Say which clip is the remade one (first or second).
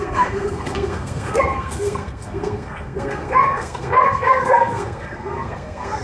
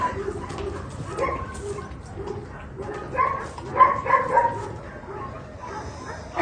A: first